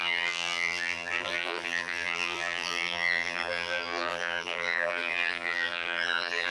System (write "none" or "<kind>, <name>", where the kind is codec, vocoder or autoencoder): vocoder, BigVGAN v2